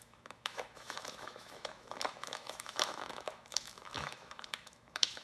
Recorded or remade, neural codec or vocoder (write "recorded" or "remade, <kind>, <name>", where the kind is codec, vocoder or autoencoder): remade, autoencoder, DAC-VAE